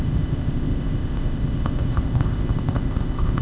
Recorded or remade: remade